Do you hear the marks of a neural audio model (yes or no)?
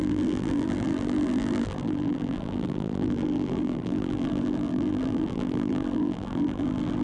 yes